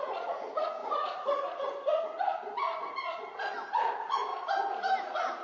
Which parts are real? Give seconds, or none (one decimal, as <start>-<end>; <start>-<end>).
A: 4.3-5.0